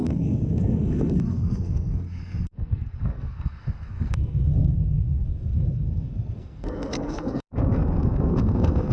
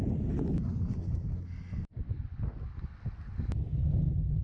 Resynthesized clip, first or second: first